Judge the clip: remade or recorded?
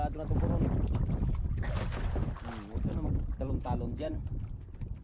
recorded